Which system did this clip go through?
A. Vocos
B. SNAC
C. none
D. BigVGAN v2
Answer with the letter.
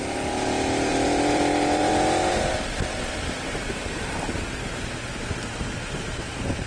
D